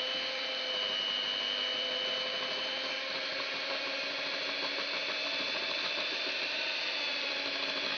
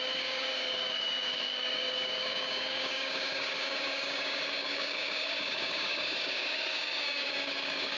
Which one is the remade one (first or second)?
second